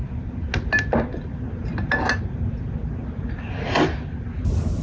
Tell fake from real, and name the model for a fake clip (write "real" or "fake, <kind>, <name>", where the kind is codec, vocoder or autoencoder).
real